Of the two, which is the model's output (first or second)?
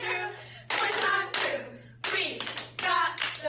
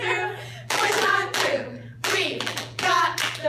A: second